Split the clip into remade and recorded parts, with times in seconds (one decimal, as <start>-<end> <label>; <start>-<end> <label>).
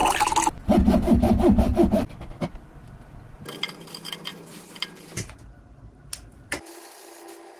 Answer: 0.0-4.3 recorded; 4.3-6.7 remade; 6.7-7.6 recorded